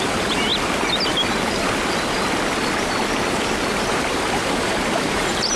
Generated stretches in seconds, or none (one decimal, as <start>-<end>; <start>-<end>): 0.0-0.5; 3.9-5.6